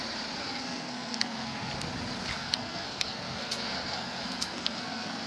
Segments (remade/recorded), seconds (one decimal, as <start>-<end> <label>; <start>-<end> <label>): 0.0-0.4 recorded; 0.4-1.7 remade; 1.7-2.3 recorded; 2.3-5.3 remade